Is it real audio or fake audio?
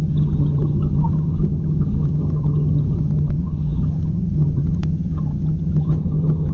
fake